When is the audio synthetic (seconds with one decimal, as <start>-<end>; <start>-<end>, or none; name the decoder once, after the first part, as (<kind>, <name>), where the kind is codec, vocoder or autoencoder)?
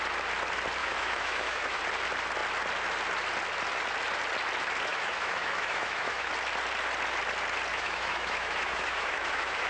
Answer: 0.8-1.8 (autoencoder, DAC-VAE); 4.9-6.3; 7.7-9.7